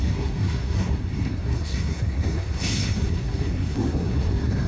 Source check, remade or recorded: remade